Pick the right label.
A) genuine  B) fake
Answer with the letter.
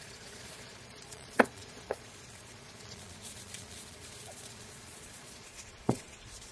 B